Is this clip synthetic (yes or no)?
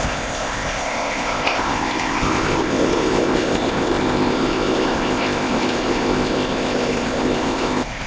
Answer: yes